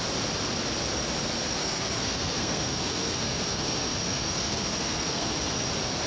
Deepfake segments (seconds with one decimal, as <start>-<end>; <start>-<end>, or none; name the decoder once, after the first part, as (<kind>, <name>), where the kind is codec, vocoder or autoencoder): 1.6-5.3 (codec, SNAC)